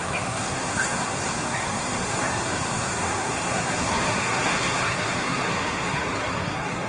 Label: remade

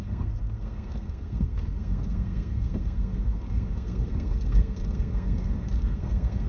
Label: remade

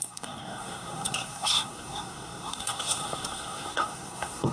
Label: remade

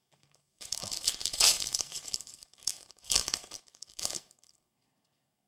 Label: remade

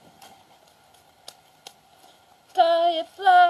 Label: recorded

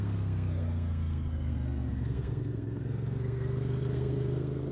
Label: remade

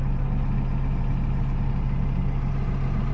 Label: recorded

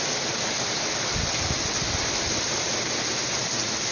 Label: recorded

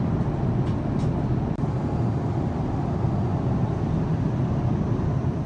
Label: recorded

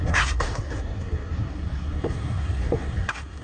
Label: remade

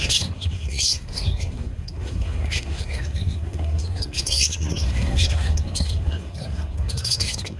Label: remade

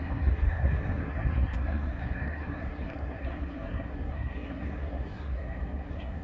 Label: remade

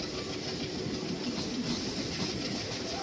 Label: recorded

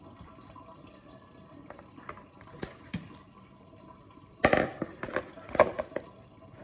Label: recorded